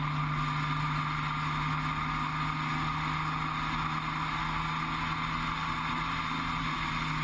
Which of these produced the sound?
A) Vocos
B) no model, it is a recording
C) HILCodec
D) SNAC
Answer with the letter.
B